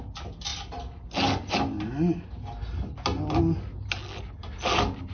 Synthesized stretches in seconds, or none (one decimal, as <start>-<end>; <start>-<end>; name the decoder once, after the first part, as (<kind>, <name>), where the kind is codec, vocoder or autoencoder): none